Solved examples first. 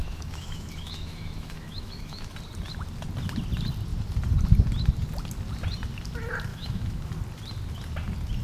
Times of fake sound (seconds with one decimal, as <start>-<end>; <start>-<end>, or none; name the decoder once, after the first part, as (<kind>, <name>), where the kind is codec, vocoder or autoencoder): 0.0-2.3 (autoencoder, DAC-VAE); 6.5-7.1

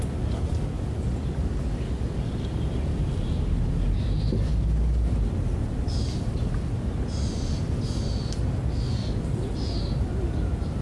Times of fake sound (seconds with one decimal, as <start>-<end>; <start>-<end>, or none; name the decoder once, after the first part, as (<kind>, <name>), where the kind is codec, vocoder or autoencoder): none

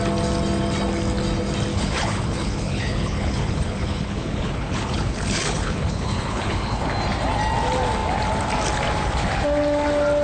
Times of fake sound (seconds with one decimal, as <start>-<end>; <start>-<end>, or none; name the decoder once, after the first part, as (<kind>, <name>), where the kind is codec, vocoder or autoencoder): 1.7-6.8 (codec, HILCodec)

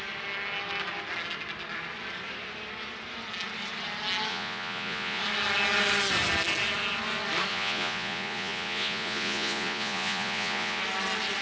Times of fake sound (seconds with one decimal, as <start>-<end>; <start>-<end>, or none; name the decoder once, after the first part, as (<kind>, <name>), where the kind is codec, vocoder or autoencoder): 4.3-5.2 (vocoder, Vocos); 7.5-10.8